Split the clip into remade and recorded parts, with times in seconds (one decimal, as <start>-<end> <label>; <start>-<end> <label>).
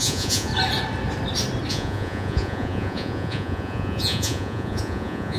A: 0.0-0.5 remade; 0.5-1.7 recorded; 1.7-5.4 remade